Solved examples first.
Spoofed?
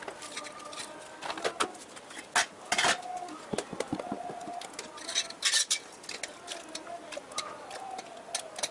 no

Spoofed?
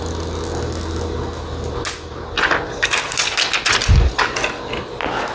no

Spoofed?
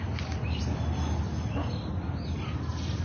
no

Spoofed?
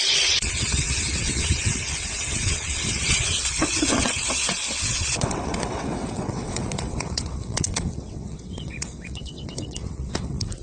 yes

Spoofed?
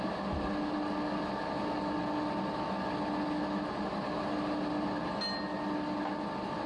no